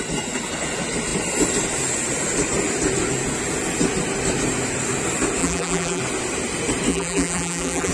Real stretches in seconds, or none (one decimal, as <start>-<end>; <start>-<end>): 0.0-5.4; 6.0-6.9